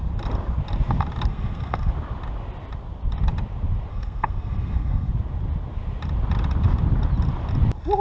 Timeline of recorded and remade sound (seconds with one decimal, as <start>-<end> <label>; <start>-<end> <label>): 0.0-1.3 recorded; 1.3-1.9 remade; 1.9-3.9 recorded; 3.9-5.1 remade; 5.1-8.0 recorded